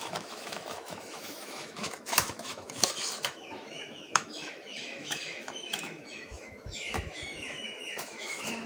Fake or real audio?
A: fake